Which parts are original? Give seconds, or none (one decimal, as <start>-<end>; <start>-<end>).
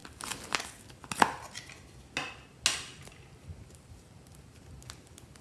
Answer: 0.0-2.9; 4.6-5.4